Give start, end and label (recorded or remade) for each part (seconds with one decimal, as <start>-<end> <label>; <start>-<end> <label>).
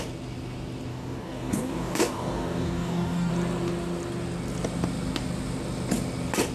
0.0-0.9 recorded; 0.9-3.3 remade; 3.3-6.5 recorded